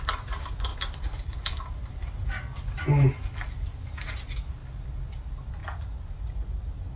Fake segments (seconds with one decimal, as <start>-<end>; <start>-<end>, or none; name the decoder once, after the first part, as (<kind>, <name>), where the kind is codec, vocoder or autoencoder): none

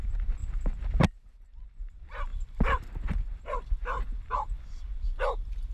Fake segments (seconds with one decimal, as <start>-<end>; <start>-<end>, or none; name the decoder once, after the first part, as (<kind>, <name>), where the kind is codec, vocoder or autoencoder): none